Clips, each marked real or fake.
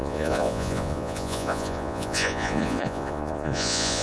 fake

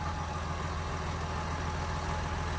real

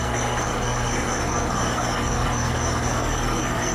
fake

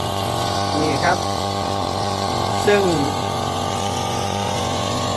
fake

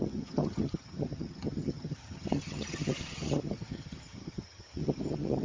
fake